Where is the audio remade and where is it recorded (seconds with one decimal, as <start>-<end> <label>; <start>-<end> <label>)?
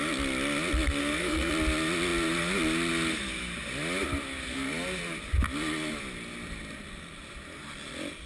0.0-1.0 recorded; 1.0-1.5 remade; 1.5-8.3 recorded